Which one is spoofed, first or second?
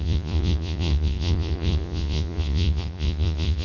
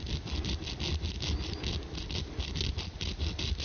first